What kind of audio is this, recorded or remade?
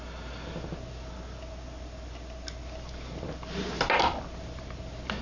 recorded